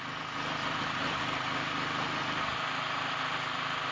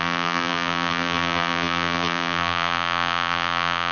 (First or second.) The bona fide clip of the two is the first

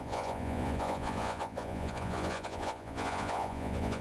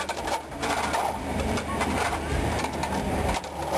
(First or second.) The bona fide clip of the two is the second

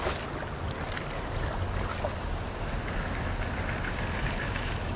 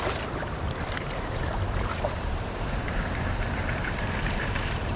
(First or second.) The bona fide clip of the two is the first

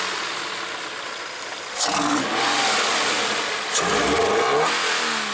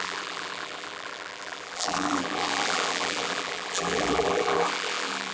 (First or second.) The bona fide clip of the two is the first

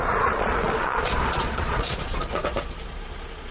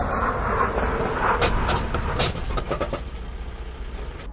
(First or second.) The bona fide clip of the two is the second